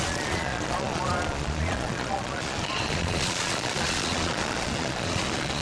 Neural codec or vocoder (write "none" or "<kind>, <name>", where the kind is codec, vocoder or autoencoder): vocoder, Vocos